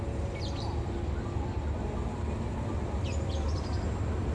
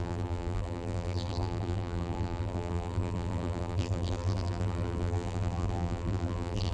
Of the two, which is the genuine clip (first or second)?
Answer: first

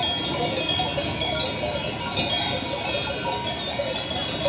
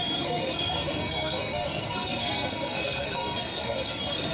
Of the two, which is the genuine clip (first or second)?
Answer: first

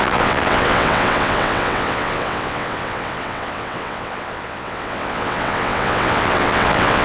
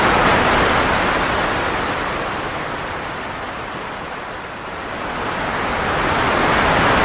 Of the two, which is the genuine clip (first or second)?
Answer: second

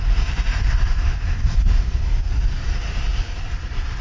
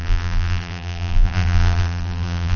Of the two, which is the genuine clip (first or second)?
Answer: first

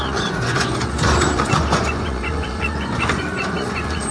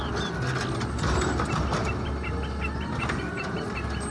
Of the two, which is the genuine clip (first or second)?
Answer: second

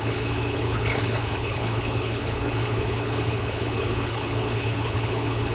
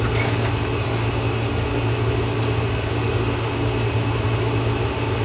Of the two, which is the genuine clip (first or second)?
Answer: second